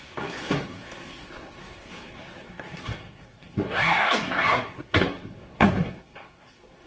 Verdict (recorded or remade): remade